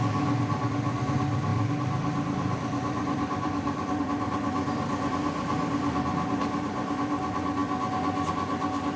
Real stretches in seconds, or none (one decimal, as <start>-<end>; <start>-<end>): 0.0-1.5; 4.0-9.0